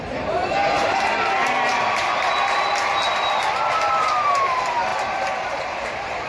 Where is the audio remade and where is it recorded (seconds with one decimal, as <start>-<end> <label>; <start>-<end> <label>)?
0.0-1.4 remade; 1.4-4.3 recorded; 4.3-6.3 remade